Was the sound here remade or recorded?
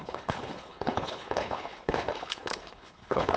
remade